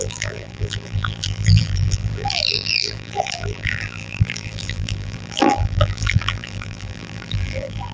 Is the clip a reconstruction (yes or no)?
yes